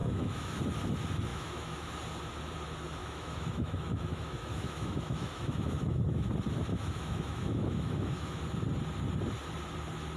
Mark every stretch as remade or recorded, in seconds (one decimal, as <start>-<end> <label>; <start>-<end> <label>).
0.0-0.6 remade; 0.6-1.3 recorded; 1.3-1.9 remade; 1.9-3.0 recorded; 3.0-6.3 remade; 6.3-6.7 recorded; 6.7-8.4 remade; 8.4-10.2 recorded